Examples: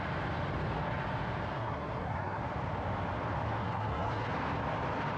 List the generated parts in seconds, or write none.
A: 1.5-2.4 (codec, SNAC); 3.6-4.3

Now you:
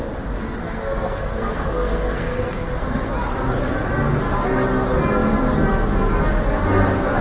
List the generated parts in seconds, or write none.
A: 0.6-3.1 (codec, SNAC)